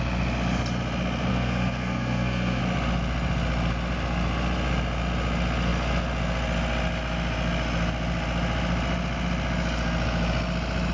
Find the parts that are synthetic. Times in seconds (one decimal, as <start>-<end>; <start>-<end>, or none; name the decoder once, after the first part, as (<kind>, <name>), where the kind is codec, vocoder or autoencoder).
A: 1.3-2.6 (codec, SNAC)